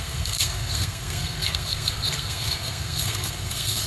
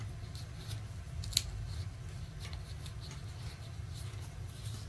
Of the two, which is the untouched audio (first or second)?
second